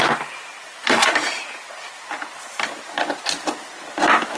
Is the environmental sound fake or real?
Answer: real